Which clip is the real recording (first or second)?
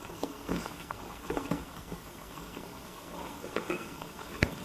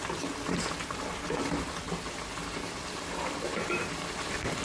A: second